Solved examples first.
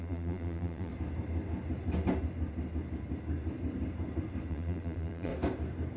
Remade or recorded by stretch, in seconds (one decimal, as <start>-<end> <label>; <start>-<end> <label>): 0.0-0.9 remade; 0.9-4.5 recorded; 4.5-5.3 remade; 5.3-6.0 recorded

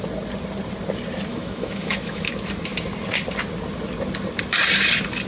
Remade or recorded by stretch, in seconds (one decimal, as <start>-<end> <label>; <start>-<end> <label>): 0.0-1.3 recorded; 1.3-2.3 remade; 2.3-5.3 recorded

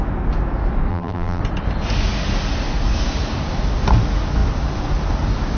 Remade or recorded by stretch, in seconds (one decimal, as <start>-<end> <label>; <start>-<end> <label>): 0.0-0.9 recorded; 0.9-1.4 remade; 1.4-5.6 recorded

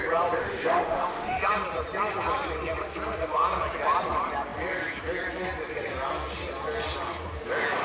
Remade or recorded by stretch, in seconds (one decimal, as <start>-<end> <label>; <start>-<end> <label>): 0.0-0.4 recorded; 0.4-1.4 remade; 1.4-7.8 recorded

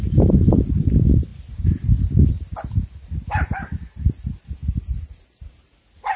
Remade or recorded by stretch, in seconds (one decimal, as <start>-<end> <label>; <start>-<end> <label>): 0.0-4.6 recorded; 4.6-5.6 remade; 5.6-6.2 recorded

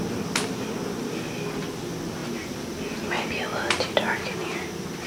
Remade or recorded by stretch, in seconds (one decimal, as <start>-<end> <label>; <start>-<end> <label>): 0.0-5.1 recorded

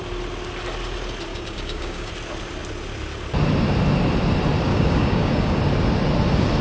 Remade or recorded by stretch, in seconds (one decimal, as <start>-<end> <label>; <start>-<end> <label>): 0.0-1.3 recorded; 1.3-2.1 remade; 2.1-4.7 recorded; 4.7-5.6 remade; 5.6-6.6 recorded